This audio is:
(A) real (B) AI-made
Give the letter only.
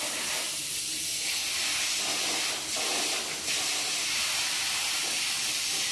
A